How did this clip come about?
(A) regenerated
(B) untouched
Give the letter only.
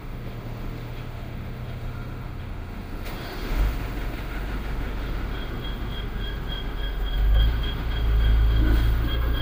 A